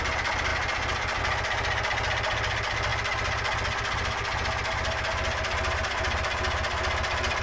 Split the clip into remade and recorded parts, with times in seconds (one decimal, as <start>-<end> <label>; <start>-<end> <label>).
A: 0.0-7.4 recorded